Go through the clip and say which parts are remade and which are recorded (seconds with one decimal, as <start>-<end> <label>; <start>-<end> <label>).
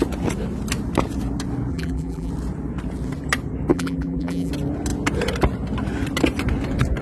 0.0-1.7 recorded; 1.7-2.3 remade; 2.3-3.7 recorded; 3.7-4.5 remade; 4.5-7.0 recorded